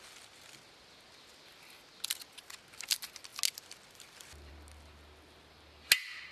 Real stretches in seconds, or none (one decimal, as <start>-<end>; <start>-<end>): 0.0-6.3

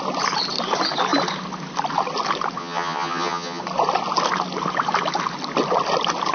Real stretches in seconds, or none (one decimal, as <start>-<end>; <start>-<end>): 0.0-2.6; 3.6-6.3